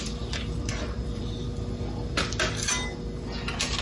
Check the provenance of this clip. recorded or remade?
recorded